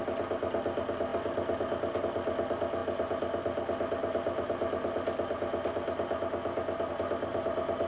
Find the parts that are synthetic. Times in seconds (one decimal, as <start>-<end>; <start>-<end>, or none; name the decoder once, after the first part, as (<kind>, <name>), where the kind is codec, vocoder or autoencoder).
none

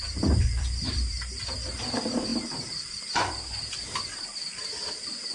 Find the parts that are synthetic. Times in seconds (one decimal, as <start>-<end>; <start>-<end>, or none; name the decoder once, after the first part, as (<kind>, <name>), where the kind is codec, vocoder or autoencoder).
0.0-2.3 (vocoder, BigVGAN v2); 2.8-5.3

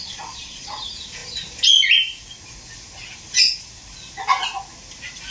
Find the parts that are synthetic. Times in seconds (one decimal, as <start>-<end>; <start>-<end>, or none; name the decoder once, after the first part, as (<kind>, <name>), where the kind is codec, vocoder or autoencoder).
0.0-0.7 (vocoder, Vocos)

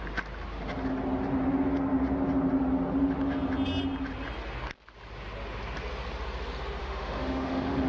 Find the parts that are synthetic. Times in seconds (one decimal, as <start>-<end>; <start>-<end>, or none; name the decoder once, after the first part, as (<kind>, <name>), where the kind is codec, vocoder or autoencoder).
6.8-7.9 (autoencoder, DAC-VAE)